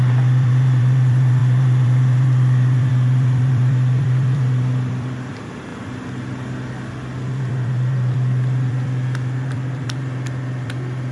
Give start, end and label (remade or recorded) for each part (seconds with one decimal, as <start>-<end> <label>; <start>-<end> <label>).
0.0-5.7 remade; 5.7-7.3 recorded; 7.3-11.1 remade